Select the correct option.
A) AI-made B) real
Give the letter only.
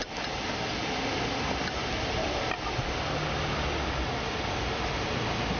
B